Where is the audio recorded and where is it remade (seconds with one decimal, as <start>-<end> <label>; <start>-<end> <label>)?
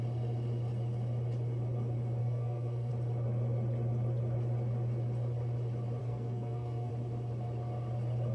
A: 0.0-2.2 recorded; 2.2-2.9 remade; 2.9-6.0 recorded; 6.0-6.9 remade; 6.9-8.3 recorded